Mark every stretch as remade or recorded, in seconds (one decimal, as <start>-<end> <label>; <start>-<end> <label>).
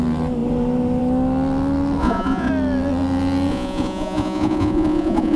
0.0-2.0 recorded; 2.0-2.5 remade; 2.5-3.5 recorded; 3.5-5.4 remade